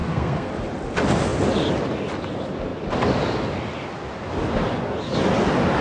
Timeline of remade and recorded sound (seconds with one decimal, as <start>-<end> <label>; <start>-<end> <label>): 0.0-0.5 remade; 0.5-5.8 recorded